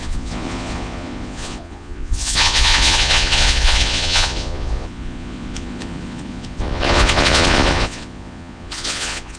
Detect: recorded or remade remade